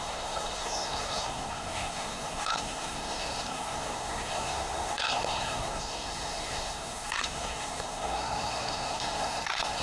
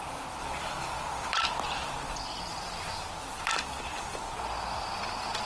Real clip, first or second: second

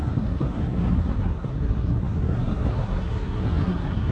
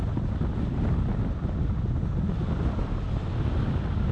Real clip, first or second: second